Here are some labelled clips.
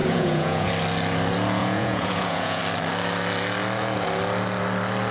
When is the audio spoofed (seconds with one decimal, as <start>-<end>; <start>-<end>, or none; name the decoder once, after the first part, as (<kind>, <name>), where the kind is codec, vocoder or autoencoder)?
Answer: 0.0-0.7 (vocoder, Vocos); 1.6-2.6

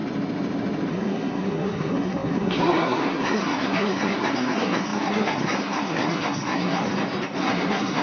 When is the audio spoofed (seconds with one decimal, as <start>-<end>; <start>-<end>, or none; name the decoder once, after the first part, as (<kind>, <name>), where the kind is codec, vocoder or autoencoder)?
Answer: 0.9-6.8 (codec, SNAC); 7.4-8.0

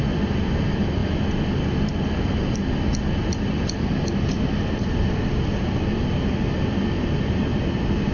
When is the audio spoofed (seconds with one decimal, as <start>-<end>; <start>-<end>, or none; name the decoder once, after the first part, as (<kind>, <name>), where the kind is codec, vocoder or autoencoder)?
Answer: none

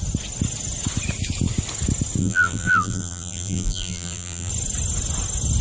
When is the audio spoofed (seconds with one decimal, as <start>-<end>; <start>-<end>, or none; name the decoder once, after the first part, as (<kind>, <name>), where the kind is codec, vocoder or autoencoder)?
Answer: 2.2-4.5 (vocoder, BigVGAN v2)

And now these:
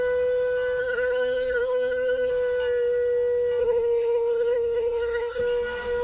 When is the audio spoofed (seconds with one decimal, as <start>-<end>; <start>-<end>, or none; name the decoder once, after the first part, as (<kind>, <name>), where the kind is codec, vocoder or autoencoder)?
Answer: 0.8-2.3 (codec, SNAC); 3.6-5.4